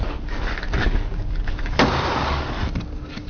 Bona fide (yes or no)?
no